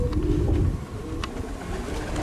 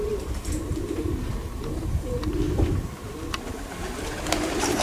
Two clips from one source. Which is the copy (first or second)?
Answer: second